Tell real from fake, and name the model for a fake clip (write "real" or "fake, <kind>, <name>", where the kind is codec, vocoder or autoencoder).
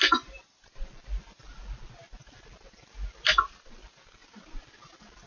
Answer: real